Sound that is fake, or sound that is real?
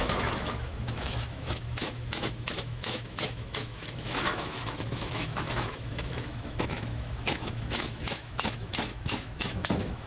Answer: fake